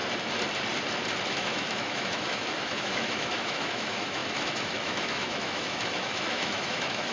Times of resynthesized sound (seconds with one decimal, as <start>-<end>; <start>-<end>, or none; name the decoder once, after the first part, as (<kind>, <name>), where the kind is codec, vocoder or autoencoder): 1.3-7.1 (autoencoder, DAC-VAE)